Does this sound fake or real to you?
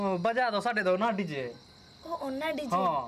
real